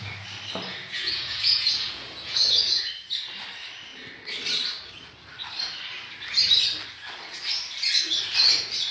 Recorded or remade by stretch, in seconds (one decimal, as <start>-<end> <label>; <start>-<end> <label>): 0.0-0.7 recorded; 0.7-2.8 remade; 2.8-8.9 recorded